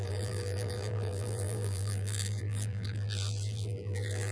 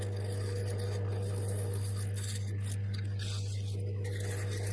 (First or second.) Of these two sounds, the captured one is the second